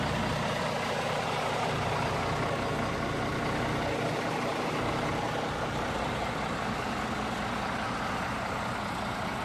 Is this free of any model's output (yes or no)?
yes